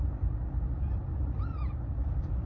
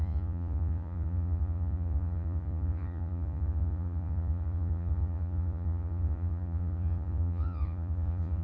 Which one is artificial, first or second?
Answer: second